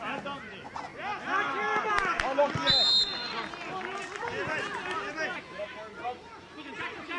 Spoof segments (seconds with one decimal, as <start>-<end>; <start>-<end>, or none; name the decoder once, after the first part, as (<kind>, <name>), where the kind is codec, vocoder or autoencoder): none